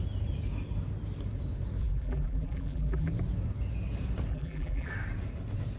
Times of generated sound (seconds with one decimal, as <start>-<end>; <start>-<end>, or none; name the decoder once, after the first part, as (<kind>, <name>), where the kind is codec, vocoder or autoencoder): 1.8-3.1 (vocoder, BigVGAN v2); 4.3-4.9